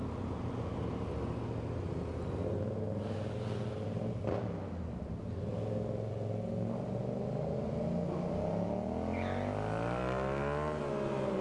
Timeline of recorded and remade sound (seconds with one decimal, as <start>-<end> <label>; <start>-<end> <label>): 0.0-11.4 recorded